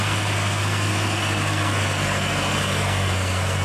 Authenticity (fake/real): fake